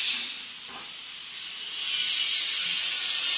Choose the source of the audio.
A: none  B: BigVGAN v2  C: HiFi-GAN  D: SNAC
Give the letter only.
A